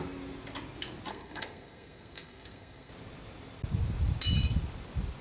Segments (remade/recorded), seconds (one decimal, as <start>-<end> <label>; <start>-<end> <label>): 0.0-1.1 recorded; 1.1-2.9 remade; 2.9-5.2 recorded